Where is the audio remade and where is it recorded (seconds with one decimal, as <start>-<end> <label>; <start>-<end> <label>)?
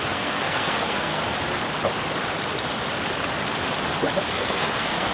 0.0-1.2 remade; 1.2-4.3 recorded; 4.3-5.1 remade